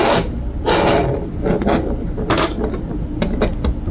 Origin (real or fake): real